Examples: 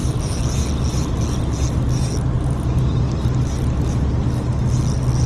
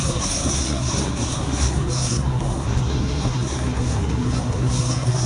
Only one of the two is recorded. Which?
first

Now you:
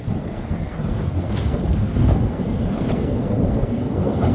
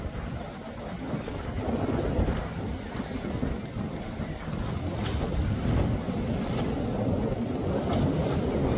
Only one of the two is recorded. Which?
second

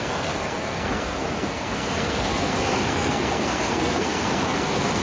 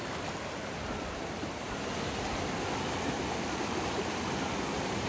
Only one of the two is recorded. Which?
second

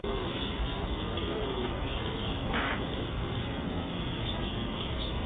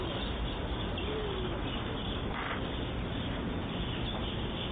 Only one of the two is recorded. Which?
second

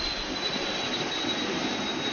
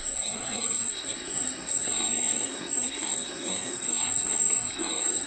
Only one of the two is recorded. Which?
first